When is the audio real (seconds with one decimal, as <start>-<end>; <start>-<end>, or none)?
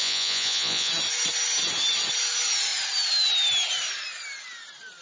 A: 0.9-5.0